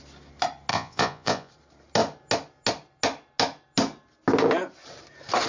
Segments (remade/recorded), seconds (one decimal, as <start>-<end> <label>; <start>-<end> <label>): 0.0-0.7 recorded; 0.7-1.5 remade; 1.5-5.5 recorded